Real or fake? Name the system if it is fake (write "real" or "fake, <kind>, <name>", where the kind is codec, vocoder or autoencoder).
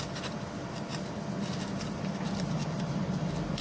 real